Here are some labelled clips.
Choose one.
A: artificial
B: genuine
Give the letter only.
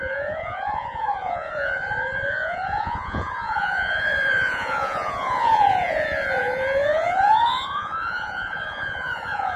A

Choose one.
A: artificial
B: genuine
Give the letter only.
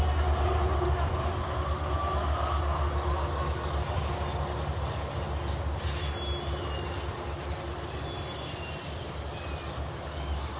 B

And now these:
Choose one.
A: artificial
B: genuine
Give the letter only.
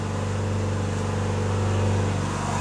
B